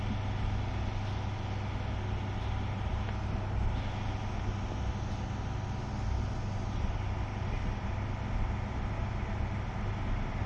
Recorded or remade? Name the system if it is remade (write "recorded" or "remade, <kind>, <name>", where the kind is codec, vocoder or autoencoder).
recorded